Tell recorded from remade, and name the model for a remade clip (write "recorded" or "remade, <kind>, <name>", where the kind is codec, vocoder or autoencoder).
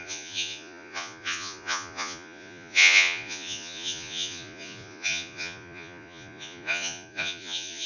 remade, vocoder, Vocos